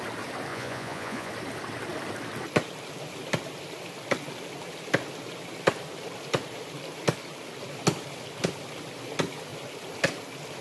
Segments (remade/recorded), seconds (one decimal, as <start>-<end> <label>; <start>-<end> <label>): 0.0-0.5 recorded; 0.5-1.3 remade; 1.3-10.6 recorded